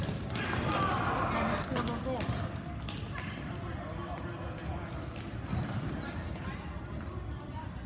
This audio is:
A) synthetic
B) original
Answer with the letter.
B